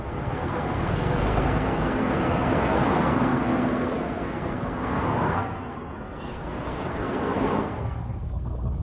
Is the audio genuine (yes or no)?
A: no